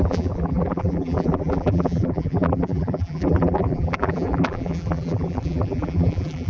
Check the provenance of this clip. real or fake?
fake